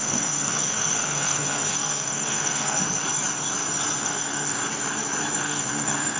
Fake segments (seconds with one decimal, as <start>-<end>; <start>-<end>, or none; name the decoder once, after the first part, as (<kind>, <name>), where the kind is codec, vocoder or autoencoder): 0.0-2.8 (codec, SNAC); 4.0-4.6; 5.4-6.2